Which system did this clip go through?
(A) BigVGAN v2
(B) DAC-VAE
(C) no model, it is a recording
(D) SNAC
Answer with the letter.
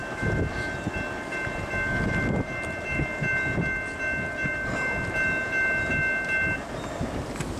C